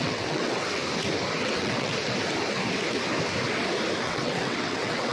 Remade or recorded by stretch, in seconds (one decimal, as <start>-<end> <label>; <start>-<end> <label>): 0.0-0.8 remade; 0.8-1.4 recorded; 1.4-1.9 remade; 1.9-4.0 recorded; 4.0-5.1 remade